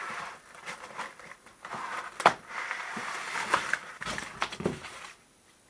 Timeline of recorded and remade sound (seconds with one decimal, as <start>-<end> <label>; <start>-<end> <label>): 0.0-5.7 recorded